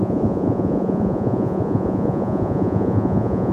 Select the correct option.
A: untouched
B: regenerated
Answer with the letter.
B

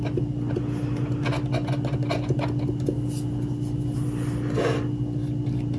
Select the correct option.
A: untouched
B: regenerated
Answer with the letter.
A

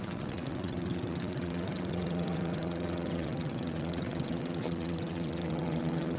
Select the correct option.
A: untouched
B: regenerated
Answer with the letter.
B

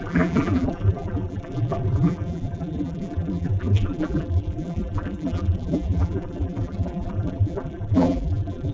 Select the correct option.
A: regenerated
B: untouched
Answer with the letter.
A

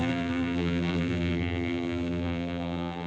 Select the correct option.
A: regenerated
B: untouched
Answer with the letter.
A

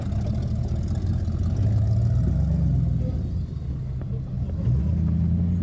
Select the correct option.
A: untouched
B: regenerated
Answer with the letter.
A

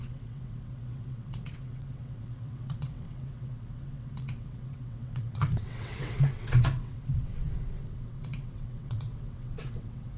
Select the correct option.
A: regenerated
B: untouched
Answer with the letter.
A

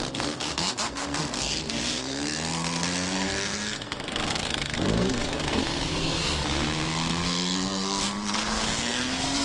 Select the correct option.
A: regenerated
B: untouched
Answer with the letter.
A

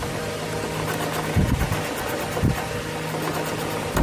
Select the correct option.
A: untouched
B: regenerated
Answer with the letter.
A